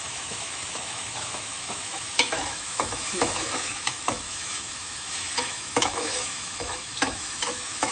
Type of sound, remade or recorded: remade